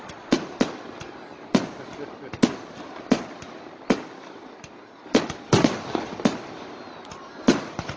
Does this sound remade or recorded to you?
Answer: recorded